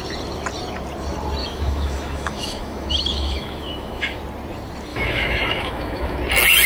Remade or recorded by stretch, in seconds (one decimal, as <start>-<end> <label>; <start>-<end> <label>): 0.0-1.4 recorded; 1.4-4.2 remade; 4.2-4.9 recorded; 4.9-6.2 remade; 6.2-6.7 recorded